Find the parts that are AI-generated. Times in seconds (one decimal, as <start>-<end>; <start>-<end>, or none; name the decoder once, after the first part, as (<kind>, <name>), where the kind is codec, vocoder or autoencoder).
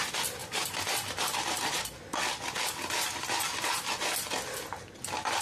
none